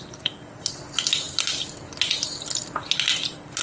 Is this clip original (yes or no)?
yes